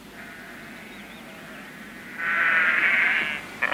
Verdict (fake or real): real